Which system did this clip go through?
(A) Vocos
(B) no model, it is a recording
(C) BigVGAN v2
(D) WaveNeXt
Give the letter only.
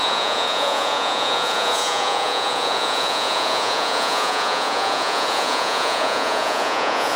A